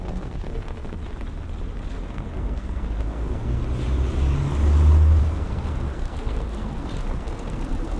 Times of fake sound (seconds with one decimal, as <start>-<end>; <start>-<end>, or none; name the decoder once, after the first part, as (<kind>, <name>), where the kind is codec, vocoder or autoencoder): 0.0-1.0 (codec, SNAC); 1.9-3.6; 5.2-8.0

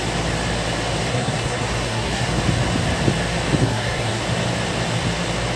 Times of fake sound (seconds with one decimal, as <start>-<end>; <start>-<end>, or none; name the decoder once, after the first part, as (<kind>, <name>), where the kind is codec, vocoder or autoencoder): 1.1-2.4 (codec, SNAC); 3.6-4.2

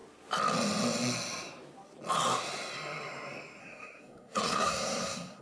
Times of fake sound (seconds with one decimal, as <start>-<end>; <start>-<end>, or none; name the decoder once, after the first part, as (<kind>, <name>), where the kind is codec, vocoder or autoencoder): 3.6-5.4 (codec, SNAC)

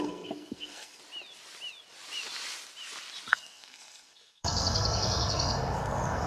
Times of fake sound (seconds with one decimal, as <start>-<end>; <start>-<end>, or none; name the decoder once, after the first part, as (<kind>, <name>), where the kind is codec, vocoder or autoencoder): 0.0-1.0 (codec, SNAC); 3.3-6.3

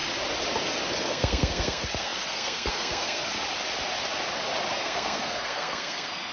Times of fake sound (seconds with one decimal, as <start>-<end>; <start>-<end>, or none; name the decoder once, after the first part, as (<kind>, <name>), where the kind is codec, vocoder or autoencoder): 1.0-3.4 (codec, SNAC); 4.7-6.3